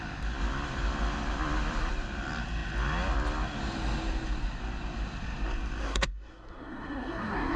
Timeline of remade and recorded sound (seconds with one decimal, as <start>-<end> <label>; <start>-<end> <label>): 0.0-5.8 recorded; 5.8-7.6 remade